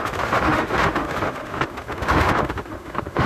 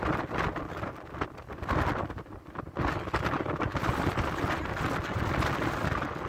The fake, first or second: first